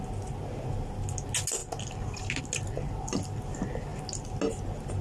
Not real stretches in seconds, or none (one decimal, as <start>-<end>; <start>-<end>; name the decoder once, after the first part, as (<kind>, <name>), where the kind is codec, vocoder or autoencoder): none